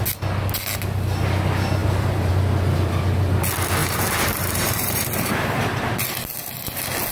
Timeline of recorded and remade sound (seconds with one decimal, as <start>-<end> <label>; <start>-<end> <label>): 0.0-1.8 recorded; 1.8-2.3 remade; 2.3-3.8 recorded; 3.8-5.9 remade; 5.9-7.1 recorded